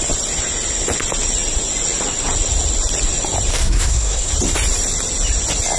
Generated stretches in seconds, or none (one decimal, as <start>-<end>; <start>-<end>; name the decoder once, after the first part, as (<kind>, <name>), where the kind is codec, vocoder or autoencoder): 3.5-4.3 (codec, SNAC)